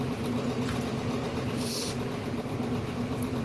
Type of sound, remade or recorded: recorded